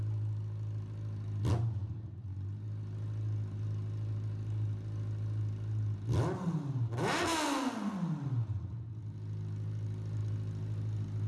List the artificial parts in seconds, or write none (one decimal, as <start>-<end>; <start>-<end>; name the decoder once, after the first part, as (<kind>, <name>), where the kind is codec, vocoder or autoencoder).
none